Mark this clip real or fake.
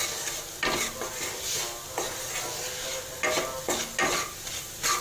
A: real